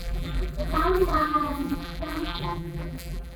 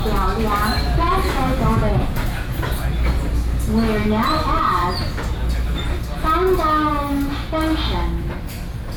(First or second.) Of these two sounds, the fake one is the first